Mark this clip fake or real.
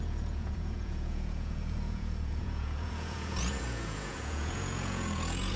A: fake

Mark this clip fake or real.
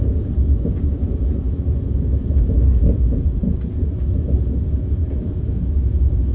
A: fake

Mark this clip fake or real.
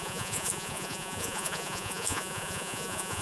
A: fake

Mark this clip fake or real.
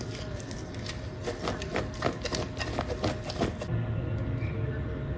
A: real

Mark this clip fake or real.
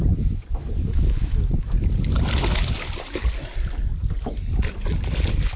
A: real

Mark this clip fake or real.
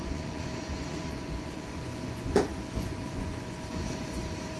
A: fake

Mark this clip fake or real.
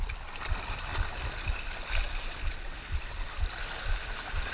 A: real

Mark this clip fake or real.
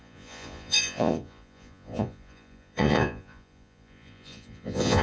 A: fake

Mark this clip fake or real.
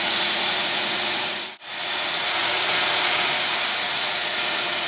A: fake